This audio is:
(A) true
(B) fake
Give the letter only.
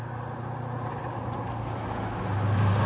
A